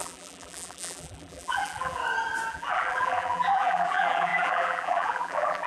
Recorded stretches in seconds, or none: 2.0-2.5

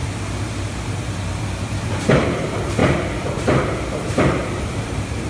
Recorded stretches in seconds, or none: 0.0-1.9

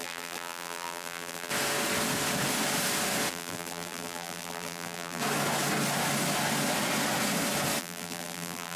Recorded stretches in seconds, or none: 1.5-3.3; 5.2-7.8